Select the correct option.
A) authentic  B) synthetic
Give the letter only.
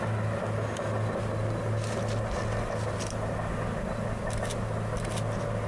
A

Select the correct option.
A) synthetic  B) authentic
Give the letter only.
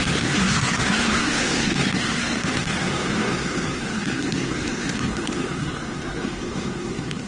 A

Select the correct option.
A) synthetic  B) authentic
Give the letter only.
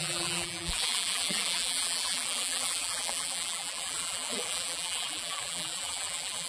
A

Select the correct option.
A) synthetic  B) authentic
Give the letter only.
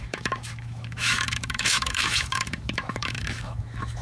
A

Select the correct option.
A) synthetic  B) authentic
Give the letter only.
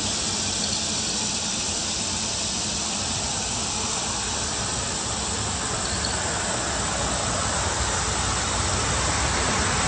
B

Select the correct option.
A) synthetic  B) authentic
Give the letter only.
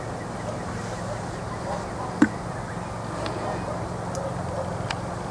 B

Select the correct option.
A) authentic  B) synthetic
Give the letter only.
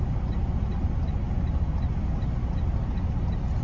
A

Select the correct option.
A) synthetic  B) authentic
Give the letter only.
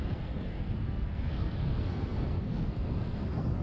A